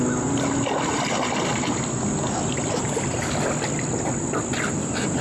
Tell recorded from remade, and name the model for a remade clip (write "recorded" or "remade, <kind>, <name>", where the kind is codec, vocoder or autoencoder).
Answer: recorded